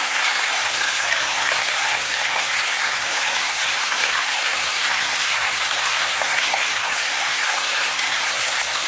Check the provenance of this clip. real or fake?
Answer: fake